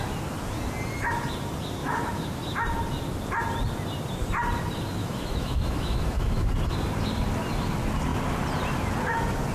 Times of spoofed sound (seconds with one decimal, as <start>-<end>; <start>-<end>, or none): 1.8-2.4; 5.0-6.5